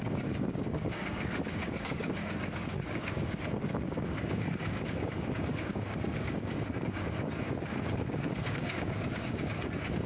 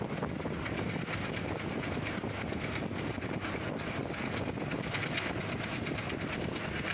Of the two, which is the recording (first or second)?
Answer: second